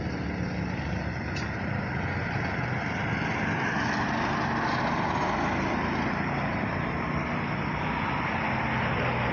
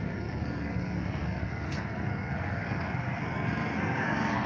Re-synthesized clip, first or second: second